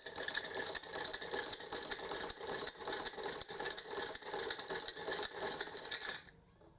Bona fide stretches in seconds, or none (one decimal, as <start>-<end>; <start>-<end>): 0.0-6.8